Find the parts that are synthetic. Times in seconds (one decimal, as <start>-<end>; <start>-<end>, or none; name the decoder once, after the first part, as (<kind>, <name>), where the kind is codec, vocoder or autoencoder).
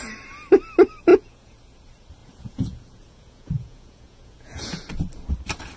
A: 1.1-1.6 (vocoder, Vocos); 2.2-4.8